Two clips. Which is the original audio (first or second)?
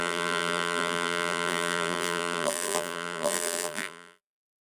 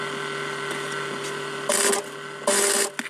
second